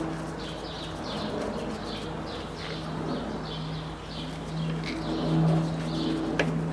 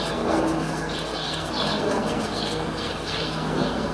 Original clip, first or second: first